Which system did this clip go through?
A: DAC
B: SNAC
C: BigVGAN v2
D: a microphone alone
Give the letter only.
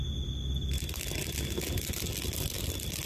D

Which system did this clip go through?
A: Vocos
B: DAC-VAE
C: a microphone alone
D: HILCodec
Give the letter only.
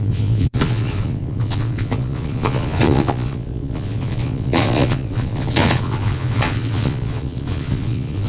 A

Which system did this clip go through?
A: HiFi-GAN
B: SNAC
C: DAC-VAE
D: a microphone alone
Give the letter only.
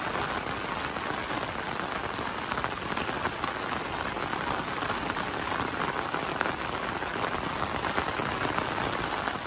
D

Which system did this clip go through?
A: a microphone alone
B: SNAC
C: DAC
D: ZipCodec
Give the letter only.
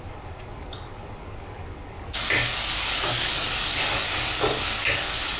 C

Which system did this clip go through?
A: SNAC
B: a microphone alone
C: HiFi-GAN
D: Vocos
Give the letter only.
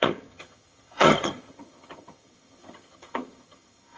C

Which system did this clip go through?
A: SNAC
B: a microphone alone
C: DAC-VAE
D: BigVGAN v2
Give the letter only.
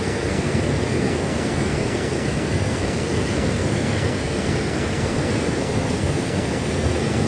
A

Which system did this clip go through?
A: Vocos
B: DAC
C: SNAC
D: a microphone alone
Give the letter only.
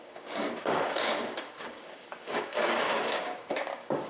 B